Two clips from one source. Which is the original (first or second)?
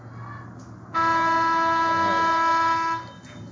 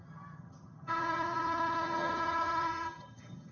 first